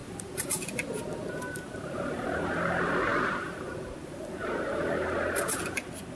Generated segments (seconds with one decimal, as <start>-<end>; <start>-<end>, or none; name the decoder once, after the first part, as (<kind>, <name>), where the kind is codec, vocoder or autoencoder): none